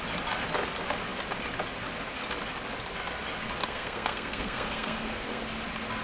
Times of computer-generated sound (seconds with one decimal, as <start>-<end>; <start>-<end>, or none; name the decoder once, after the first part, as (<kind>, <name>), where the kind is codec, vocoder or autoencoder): 3.6-5.4 (codec, SNAC)